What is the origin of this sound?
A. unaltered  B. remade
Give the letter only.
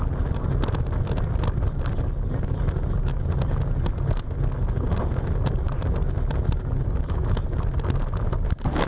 A